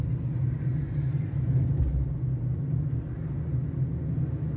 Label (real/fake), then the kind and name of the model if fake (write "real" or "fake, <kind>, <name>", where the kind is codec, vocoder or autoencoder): real